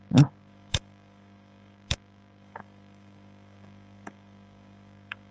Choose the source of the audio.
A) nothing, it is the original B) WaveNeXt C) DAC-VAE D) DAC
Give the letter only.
D